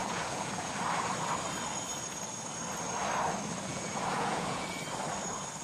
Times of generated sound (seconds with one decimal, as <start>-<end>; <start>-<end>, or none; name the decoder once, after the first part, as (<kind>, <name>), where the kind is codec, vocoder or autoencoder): 0.0-0.7 (vocoder, Vocos); 3.7-4.8